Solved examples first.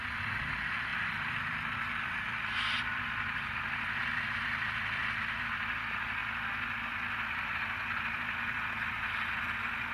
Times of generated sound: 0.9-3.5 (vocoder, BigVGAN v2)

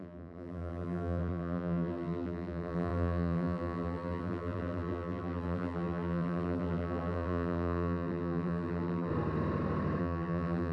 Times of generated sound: 0.0-9.1 (vocoder, BigVGAN v2); 10.0-10.7

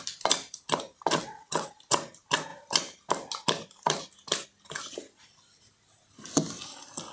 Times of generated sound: 1.2-1.7 (vocoder, WaveNeXt)

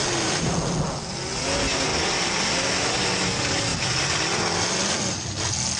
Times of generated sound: 1.9-2.5 (vocoder, BigVGAN v2); 3.7-4.4

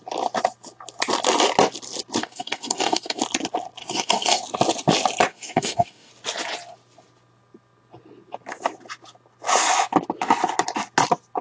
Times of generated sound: 2.2-3.2 (codec, DAC); 3.8-4.4; 5.3-6.1

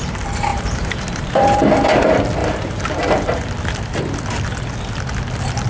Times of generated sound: 0.5-1.6 (vocoder, BigVGAN v2); 2.4-3.4

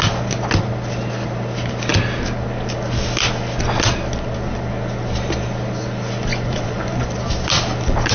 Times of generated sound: 6.3-7.1 (vocoder, Vocos)

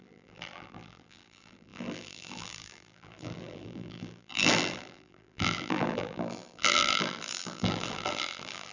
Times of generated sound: 0.0-8.7 (vocoder, BigVGAN v2)